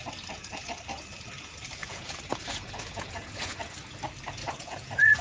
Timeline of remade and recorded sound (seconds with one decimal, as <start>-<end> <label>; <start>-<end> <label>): 0.0-1.8 recorded; 1.8-3.6 remade; 3.6-4.4 recorded; 4.4-5.2 remade